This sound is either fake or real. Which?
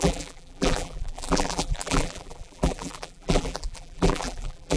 fake